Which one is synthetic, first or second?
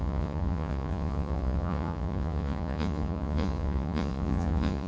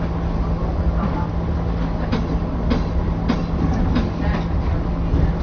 first